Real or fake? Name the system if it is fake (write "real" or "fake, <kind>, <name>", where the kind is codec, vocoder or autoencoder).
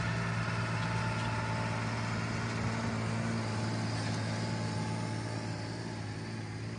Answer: real